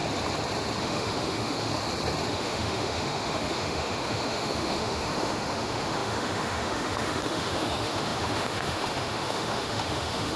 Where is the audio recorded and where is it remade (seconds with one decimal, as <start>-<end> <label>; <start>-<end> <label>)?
0.0-0.8 recorded; 0.8-1.7 remade; 1.7-2.3 recorded; 2.3-10.4 remade